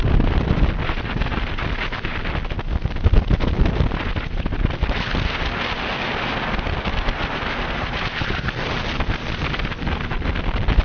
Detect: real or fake real